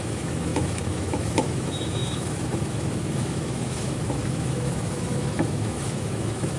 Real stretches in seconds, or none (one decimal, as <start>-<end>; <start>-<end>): none